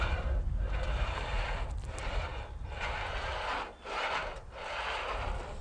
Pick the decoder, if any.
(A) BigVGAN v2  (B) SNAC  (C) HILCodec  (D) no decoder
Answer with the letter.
D